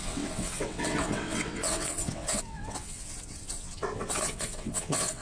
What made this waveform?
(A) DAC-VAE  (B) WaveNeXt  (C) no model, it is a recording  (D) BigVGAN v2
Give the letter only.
B